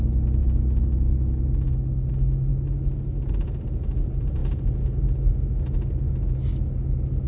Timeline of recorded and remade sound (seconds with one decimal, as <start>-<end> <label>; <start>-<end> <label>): 0.0-7.3 recorded